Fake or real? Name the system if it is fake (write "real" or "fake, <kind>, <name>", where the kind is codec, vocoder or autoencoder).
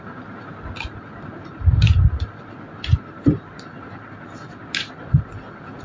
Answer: real